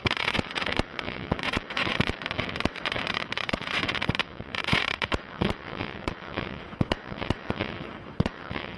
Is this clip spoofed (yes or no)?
yes